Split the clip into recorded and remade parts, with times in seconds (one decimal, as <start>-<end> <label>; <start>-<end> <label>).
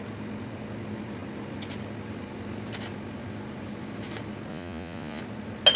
0.0-4.5 recorded; 4.5-5.2 remade; 5.2-5.8 recorded